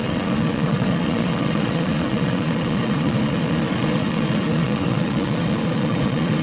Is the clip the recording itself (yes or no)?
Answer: no